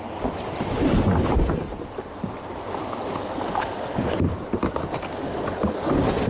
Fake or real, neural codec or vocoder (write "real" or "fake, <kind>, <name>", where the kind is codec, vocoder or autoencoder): real